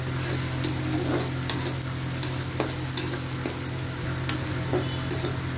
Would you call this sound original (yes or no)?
yes